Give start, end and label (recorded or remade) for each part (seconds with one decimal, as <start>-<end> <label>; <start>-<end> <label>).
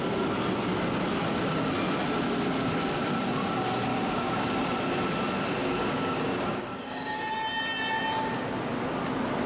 0.0-3.9 recorded; 3.9-4.5 remade; 4.5-5.6 recorded; 5.6-7.2 remade; 7.2-9.5 recorded